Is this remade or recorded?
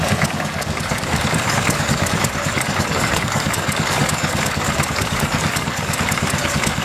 remade